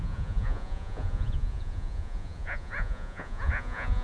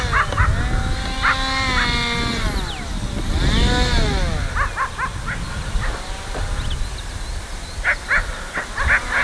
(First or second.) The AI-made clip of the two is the first